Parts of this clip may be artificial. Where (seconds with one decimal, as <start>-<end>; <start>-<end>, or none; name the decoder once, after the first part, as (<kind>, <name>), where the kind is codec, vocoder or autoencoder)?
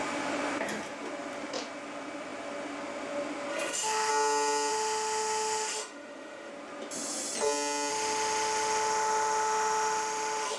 3.5-4.1 (autoencoder, DAC-VAE); 4.7-6.5; 7.9-10.6